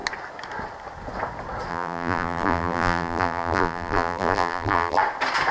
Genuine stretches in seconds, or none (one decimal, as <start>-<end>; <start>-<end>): 0.0-1.7; 5.0-5.5